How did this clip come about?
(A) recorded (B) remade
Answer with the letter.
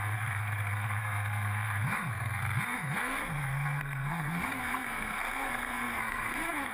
B